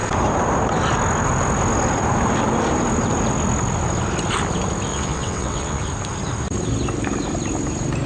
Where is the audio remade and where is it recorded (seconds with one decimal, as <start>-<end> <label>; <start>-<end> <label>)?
0.0-4.9 recorded; 4.9-5.8 remade; 5.8-8.1 recorded